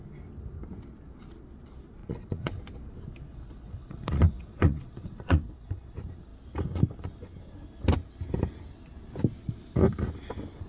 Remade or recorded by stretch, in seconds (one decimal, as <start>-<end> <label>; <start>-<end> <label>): 0.0-2.0 recorded; 2.0-2.6 remade; 2.6-3.3 recorded; 3.3-5.8 remade; 5.8-10.7 recorded